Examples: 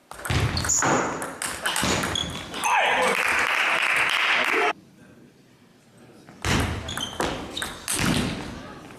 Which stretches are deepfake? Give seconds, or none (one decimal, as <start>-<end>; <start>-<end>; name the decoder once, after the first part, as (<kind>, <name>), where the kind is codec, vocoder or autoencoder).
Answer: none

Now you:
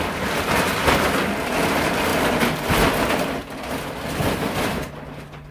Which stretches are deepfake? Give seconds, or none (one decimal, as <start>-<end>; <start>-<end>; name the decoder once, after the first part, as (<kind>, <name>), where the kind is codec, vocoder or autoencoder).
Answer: 0.0-2.1 (vocoder, BigVGAN v2)

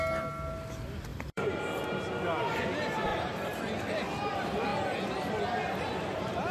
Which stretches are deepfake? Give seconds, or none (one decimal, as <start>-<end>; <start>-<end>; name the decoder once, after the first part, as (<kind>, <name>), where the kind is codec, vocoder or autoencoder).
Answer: 1.1-1.8 (vocoder, BigVGAN v2); 3.1-3.8

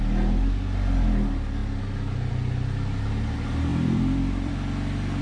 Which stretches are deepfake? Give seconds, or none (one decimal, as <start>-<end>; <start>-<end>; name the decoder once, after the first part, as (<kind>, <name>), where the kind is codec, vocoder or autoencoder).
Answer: 3.7-4.5 (vocoder, BigVGAN v2)

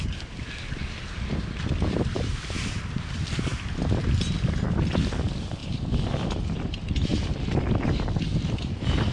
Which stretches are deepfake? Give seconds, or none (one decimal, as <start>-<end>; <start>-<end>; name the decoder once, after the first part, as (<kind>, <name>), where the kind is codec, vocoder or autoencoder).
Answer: 0.0-3.5 (vocoder, BigVGAN v2); 4.2-9.1